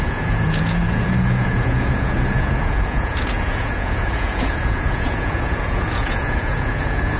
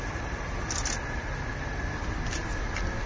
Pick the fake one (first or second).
first